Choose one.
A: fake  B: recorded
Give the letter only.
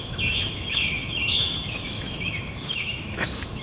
A